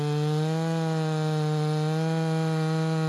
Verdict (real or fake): real